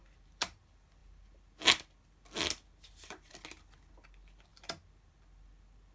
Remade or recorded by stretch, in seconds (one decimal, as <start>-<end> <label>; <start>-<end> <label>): 0.0-5.9 recorded